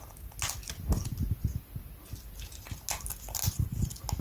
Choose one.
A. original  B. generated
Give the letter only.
A